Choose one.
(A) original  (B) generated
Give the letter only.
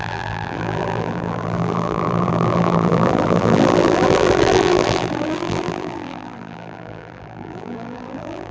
B